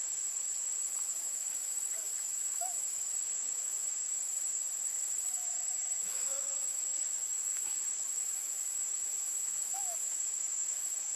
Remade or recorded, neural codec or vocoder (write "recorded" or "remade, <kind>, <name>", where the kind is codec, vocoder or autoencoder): remade, autoencoder, DAC-VAE